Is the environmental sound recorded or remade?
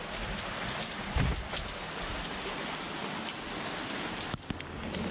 recorded